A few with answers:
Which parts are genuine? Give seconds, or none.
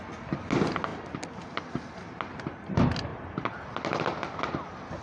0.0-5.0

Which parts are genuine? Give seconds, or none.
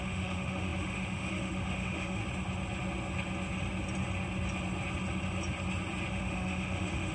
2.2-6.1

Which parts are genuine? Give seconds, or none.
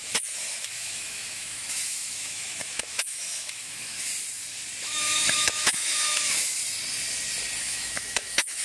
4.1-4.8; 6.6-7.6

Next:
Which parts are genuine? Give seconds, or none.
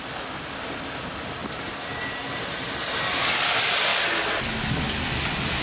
0.0-5.6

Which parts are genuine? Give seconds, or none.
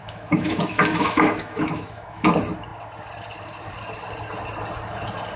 2.3-5.4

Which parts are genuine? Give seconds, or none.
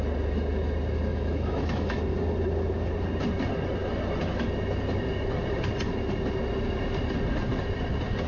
0.0-1.1; 2.0-8.3